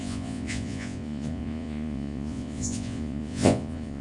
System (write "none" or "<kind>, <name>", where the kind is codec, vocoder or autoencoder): vocoder, Vocos